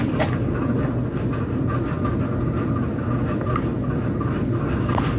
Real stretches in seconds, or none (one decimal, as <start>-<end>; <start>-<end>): 0.0-3.7; 4.3-5.2